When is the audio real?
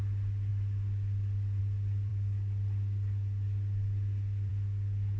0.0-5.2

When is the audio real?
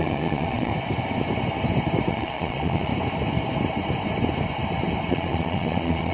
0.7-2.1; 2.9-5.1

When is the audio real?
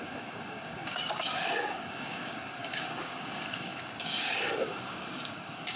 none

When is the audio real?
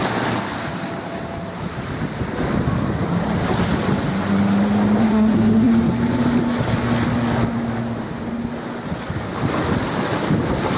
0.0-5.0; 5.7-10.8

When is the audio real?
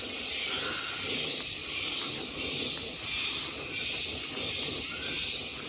0.0-1.6; 4.2-5.7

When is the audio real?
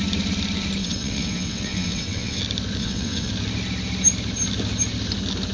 0.0-0.8; 2.4-2.8; 3.3-5.5